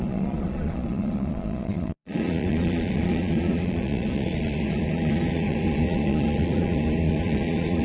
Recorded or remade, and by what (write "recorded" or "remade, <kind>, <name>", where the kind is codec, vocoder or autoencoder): remade, vocoder, Vocos